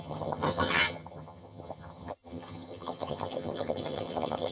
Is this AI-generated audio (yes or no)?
yes